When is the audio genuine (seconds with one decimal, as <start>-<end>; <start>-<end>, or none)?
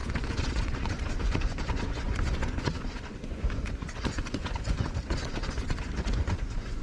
none